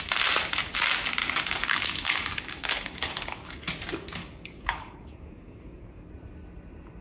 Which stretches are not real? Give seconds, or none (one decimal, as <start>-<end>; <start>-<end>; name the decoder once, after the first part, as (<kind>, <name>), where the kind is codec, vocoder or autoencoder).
1.2-3.7 (codec, DAC); 4.2-6.1